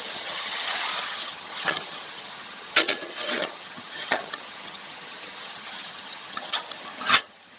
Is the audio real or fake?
fake